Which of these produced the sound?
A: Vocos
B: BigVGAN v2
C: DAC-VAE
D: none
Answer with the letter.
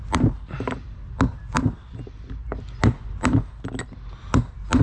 D